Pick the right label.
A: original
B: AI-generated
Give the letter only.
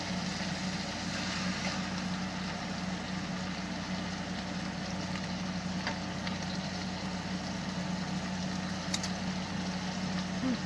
A